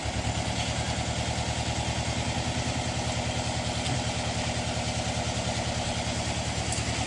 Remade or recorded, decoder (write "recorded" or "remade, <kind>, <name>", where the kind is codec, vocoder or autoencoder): recorded